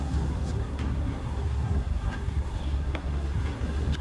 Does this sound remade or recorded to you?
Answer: remade